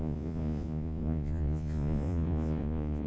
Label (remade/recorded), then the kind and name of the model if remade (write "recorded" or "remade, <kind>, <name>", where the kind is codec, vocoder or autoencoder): remade, vocoder, Vocos